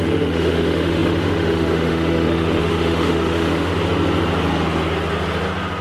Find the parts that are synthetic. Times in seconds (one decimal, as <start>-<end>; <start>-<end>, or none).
0.0-3.7